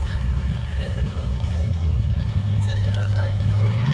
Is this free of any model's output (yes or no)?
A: no